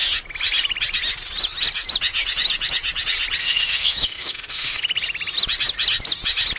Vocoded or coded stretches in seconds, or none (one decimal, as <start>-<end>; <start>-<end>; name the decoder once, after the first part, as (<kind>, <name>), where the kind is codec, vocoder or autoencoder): 3.4-4.8 (autoencoder, DAC-VAE)